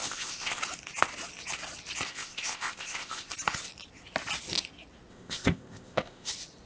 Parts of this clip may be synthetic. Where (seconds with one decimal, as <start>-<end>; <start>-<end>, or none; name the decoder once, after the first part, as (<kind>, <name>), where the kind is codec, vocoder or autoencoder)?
0.0-0.6 (codec, ZipCodec); 2.1-3.3; 5.1-6.3